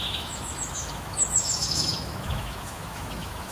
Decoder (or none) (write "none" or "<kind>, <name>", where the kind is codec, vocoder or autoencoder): autoencoder, DAC-VAE